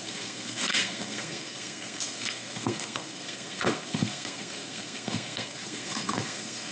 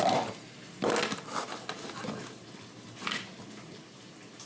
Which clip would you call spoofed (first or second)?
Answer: first